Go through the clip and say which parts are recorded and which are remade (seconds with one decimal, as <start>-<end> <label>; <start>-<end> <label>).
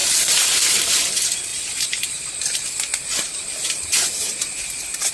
0.0-0.8 remade; 0.8-1.5 recorded; 1.5-2.3 remade; 2.3-2.9 recorded; 2.9-5.1 remade